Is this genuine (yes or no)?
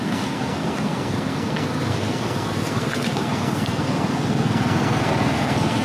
no